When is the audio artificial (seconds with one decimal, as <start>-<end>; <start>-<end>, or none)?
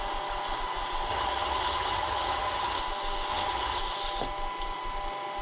1.1-2.8; 3.3-3.8